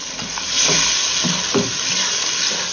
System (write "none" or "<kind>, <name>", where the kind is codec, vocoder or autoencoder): none